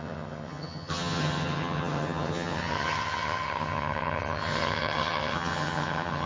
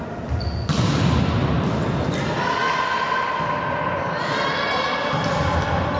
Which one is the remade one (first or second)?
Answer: first